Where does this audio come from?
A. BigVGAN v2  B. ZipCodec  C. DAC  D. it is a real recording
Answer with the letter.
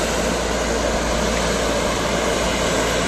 D